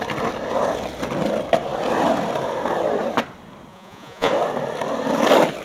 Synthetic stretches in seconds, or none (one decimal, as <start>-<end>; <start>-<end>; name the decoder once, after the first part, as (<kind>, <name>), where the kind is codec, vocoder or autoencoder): 3.7-4.3 (vocoder, Vocos)